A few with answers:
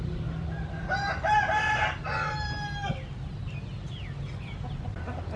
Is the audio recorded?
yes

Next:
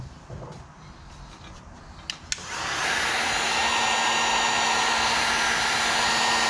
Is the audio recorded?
yes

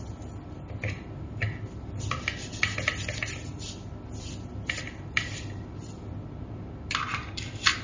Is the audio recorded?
yes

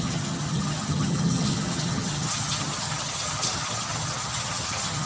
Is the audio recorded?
no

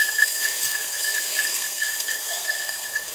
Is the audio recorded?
no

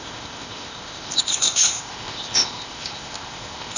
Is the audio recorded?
no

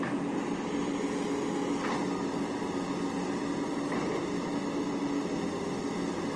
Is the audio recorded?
yes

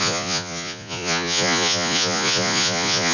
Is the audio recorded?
no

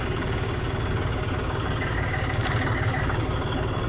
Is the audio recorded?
no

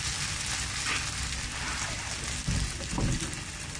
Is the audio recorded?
yes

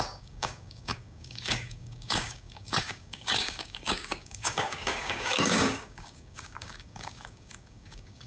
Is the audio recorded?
no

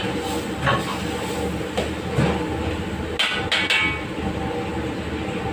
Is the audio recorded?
yes